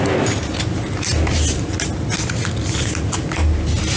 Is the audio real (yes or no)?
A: yes